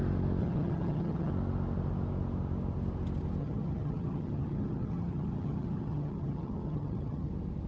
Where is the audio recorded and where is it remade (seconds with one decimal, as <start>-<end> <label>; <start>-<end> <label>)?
0.0-0.4 recorded; 0.4-1.3 remade; 1.3-3.4 recorded; 3.4-7.3 remade; 7.3-7.7 recorded